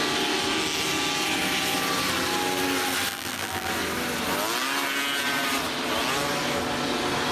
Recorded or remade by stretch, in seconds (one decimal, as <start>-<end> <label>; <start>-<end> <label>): 0.0-3.1 recorded; 3.1-3.7 remade; 3.7-7.3 recorded